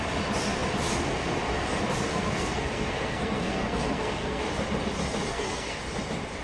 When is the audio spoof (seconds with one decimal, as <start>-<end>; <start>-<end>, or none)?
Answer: 2.1-4.4; 5.3-5.8